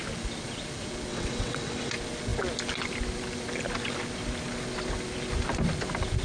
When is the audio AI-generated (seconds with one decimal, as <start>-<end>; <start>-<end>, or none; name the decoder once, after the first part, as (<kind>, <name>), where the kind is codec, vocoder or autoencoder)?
1.1-1.9 (vocoder, WaveNeXt)